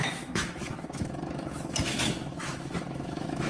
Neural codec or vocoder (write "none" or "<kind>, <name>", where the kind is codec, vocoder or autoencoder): autoencoder, DAC-VAE